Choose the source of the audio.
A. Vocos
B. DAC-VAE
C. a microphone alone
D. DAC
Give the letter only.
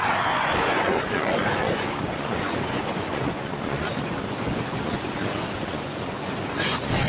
A